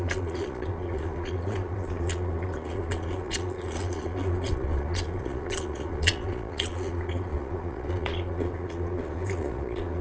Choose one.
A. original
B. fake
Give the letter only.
B